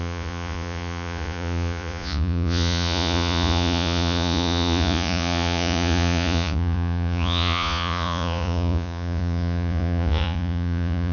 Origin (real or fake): fake